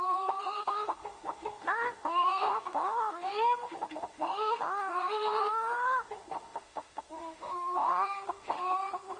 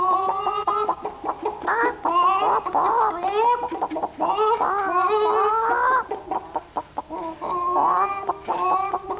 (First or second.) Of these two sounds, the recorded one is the second